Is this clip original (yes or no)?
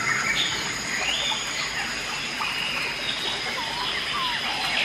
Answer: yes